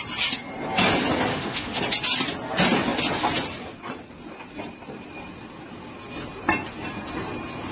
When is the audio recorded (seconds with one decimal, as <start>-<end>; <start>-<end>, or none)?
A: 0.0-1.3; 1.8-7.7

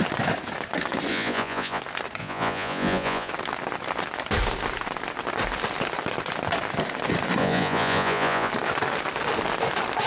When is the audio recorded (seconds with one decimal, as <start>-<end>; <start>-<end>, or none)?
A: 0.0-1.1; 1.8-2.2; 3.3-7.4; 8.5-10.1

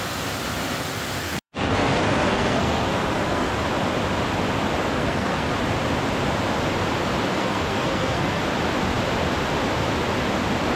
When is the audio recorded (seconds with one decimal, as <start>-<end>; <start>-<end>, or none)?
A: 0.0-1.2; 3.5-4.9; 5.5-7.3; 8.4-10.8

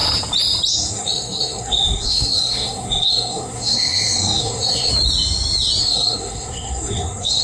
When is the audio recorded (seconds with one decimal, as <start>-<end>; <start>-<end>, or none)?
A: 0.0-0.7; 4.9-5.8

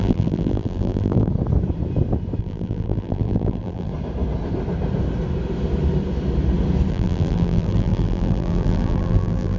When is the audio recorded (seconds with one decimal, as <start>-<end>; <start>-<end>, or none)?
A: 1.3-2.4; 3.9-6.9

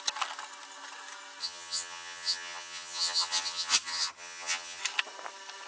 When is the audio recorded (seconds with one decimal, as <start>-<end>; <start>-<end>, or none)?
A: 0.0-1.4; 4.8-5.7

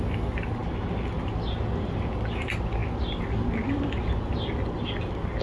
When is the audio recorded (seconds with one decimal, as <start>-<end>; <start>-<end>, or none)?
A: 0.0-5.4